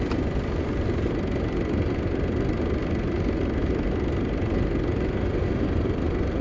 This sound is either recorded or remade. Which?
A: recorded